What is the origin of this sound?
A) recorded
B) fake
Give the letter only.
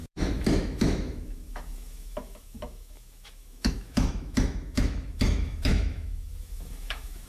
B